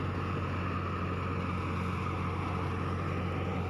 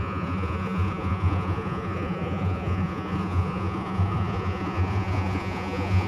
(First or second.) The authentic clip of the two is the first